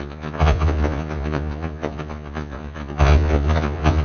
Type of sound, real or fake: fake